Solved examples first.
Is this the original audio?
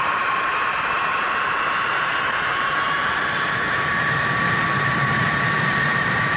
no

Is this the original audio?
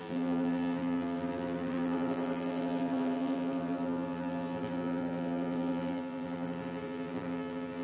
no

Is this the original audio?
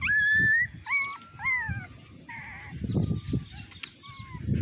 yes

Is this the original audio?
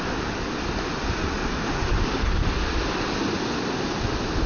yes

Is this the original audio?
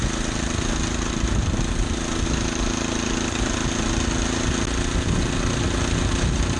yes